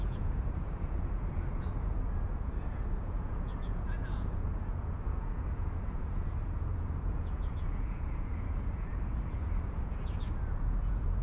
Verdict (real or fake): fake